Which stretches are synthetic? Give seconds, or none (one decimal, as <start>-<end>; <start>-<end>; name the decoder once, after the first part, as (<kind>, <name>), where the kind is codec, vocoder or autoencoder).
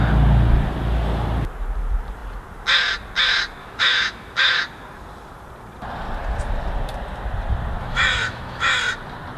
3.6-4.6 (autoencoder, DAC-VAE); 7.8-8.8